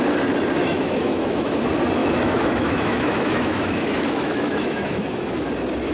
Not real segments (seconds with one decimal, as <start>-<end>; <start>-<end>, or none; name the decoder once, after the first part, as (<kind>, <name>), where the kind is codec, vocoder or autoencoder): 0.6-1.6 (autoencoder, DAC-VAE); 2.0-5.5

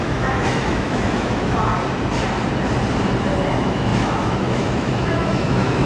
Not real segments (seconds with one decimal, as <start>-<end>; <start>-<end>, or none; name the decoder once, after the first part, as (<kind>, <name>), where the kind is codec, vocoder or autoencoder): 0.0-1.7 (autoencoder, DAC-VAE); 3.5-5.9

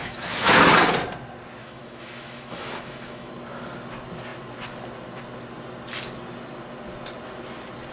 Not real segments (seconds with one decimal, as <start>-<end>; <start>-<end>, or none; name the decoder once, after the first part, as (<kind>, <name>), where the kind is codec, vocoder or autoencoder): 0.0-0.7 (autoencoder, DAC-VAE); 1.6-3.3

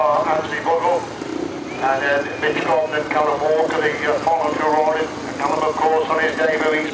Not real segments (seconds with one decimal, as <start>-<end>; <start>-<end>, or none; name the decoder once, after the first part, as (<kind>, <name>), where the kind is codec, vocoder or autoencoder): none